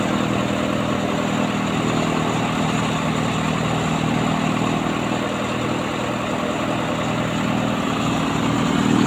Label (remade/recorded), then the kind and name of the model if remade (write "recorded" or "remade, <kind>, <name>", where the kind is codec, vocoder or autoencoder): recorded